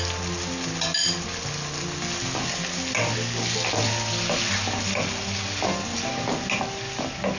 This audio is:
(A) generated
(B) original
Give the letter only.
B